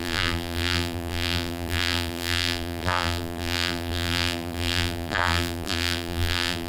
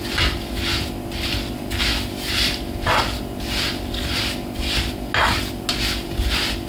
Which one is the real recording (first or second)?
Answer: second